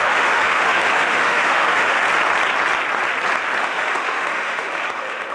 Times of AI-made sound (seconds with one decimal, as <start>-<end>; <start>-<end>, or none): 0.0-2.0; 3.6-5.3